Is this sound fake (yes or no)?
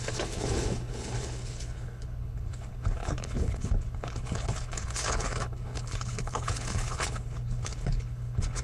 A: yes